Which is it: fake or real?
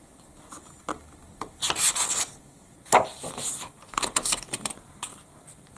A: real